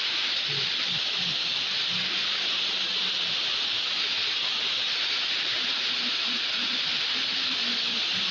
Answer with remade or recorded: recorded